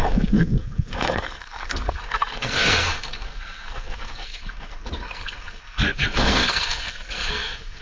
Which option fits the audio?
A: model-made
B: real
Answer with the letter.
A